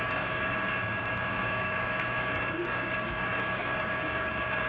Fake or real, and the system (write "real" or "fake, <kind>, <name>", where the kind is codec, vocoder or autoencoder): fake, codec, DAC